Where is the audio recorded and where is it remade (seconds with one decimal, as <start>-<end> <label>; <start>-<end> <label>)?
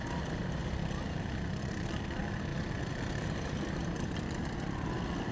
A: 0.0-0.6 remade; 0.6-1.9 recorded; 1.9-2.5 remade; 2.5-3.0 recorded; 3.0-3.8 remade; 3.8-4.4 recorded; 4.4-5.3 remade